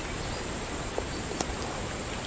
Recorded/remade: recorded